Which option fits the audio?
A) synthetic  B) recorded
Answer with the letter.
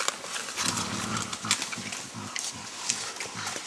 B